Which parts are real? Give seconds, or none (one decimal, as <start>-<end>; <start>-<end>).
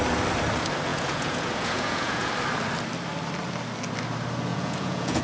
0.0-0.9; 2.3-4.5